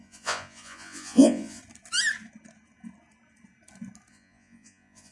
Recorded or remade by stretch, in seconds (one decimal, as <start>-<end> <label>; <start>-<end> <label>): 0.0-1.6 remade; 1.6-4.1 recorded; 4.1-5.1 remade